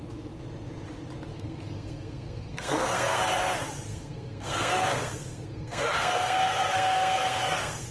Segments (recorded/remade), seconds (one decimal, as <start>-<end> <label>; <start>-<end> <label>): 0.0-1.3 recorded; 1.3-3.2 remade; 3.2-3.9 recorded; 3.9-7.9 remade